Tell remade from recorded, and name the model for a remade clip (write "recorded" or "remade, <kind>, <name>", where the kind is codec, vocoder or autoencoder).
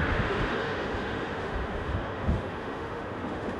remade, autoencoder, DAC-VAE